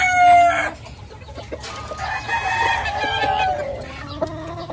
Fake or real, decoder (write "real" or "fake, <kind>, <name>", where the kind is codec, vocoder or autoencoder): real